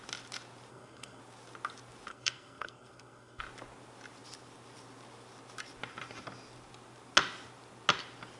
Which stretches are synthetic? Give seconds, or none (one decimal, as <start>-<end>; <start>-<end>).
0.7-1.2; 2.1-3.4